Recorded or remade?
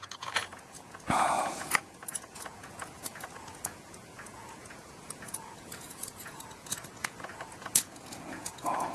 remade